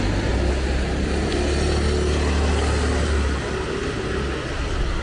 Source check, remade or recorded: recorded